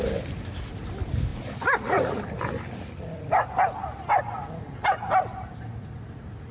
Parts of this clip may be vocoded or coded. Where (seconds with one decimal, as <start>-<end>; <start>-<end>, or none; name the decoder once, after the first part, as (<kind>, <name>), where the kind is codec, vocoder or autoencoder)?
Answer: none